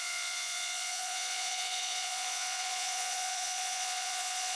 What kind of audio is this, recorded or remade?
remade